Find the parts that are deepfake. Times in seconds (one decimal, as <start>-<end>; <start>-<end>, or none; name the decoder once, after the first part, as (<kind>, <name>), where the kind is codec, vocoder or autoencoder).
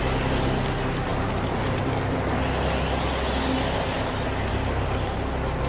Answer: none